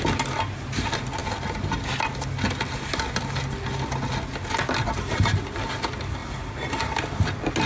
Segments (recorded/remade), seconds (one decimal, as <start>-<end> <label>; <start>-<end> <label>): 0.0-7.7 recorded

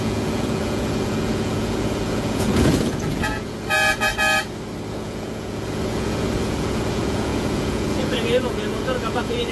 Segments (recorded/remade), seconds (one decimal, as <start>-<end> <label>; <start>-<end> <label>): 0.0-4.1 remade; 4.1-4.9 recorded; 4.9-9.5 remade

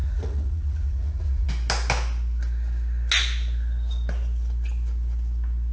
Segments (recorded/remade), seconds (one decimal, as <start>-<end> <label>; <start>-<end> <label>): 0.0-1.5 remade; 1.5-5.7 recorded

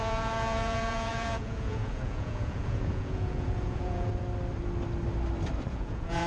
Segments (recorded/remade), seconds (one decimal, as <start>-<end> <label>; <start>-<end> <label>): 0.0-4.1 remade; 4.1-5.7 recorded; 5.7-6.3 remade

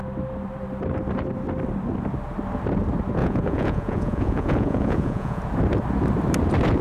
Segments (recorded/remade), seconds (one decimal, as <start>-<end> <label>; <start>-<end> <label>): 0.0-3.2 recorded; 3.2-5.4 remade; 5.4-6.8 recorded

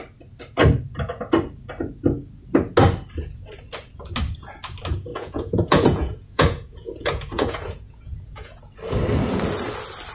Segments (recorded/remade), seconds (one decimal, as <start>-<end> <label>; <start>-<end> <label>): 0.0-5.1 recorded; 5.1-8.6 remade; 8.6-10.1 recorded

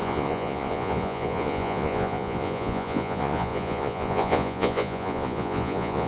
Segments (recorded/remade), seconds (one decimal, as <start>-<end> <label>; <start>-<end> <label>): 0.0-6.1 remade